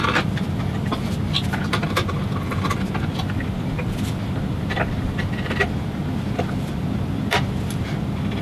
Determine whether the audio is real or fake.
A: fake